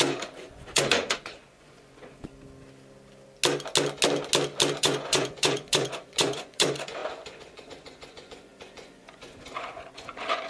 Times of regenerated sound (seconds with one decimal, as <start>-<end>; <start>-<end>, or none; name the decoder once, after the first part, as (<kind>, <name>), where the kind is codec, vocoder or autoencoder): 0.0-2.3 (vocoder, Vocos); 4.8-10.5